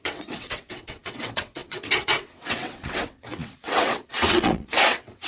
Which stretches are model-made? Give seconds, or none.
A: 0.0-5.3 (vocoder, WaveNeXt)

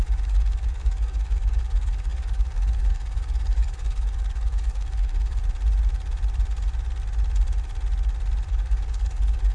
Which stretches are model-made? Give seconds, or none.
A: 0.0-5.4 (codec, DAC); 8.5-9.5

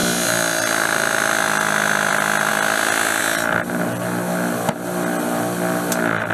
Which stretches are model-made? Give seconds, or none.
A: 0.0-2.1 (vocoder, BigVGAN v2)

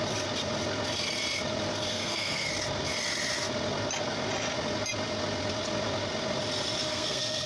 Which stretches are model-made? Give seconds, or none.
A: 1.9-2.5 (codec, SNAC); 6.8-7.5

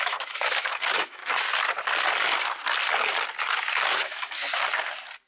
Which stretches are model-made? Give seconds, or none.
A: 0.0-1.2 (autoencoder, DAC-VAE); 3.9-4.4

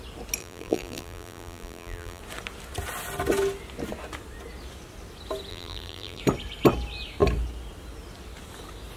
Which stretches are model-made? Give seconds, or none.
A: 0.4-2.2 (vocoder, BigVGAN v2); 5.5-6.2

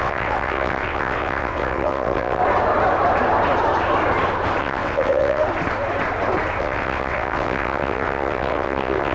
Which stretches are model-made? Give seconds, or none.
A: 0.0-2.4 (vocoder, WaveNeXt); 4.6-5.4; 6.6-9.1